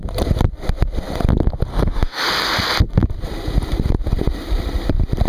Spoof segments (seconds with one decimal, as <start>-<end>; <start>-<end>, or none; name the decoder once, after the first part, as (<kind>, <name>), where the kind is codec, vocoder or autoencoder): 1.7-2.3 (autoencoder, DAC-VAE)